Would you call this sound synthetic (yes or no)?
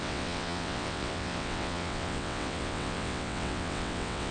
yes